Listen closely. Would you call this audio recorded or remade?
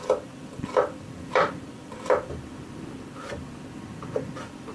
remade